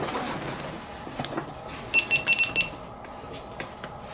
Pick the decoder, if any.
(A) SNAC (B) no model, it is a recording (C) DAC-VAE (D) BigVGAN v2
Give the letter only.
B